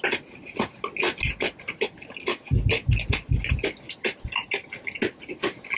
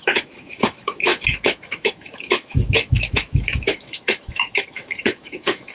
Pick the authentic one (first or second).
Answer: first